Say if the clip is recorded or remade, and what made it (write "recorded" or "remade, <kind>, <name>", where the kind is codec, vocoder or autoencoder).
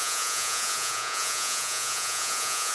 remade, vocoder, Vocos